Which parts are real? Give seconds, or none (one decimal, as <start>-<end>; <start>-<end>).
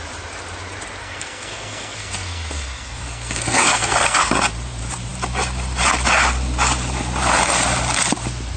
0.0-1.0; 4.3-8.6